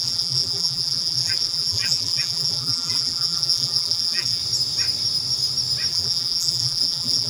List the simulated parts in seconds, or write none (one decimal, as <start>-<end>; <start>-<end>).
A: 0.0-4.4; 5.9-7.3